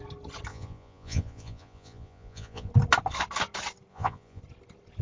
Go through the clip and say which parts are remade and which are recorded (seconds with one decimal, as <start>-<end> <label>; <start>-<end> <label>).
0.0-0.5 recorded; 0.5-2.7 remade; 2.7-3.9 recorded; 3.9-4.4 remade; 4.4-5.0 recorded